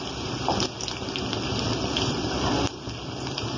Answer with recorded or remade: recorded